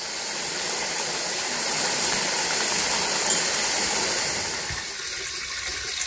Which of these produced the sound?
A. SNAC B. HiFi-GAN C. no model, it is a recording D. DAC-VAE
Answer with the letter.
C